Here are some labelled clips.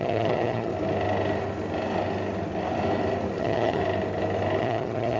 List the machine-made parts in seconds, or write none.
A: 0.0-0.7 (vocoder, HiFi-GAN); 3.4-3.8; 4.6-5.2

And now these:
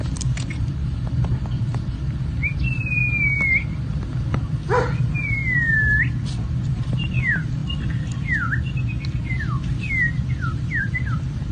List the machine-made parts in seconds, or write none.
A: 0.0-3.0 (vocoder, BigVGAN v2); 4.0-5.4; 6.5-7.6; 10.8-11.5

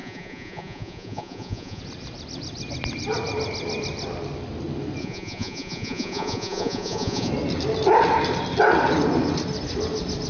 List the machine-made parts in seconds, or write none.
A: 0.0-1.8 (vocoder, Vocos); 5.0-7.3